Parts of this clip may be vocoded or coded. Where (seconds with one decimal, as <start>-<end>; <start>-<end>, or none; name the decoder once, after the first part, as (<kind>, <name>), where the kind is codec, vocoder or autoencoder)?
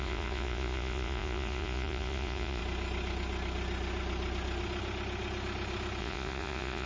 0.0-2.6 (vocoder, Vocos); 6.0-6.9